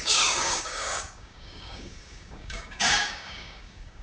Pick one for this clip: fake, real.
fake